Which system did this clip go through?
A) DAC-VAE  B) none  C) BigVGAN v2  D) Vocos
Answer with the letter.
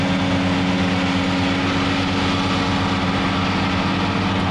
B